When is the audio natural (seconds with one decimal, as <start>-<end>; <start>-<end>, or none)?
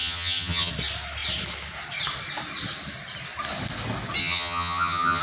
0.7-4.2